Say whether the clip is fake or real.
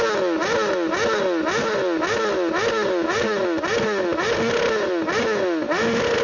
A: real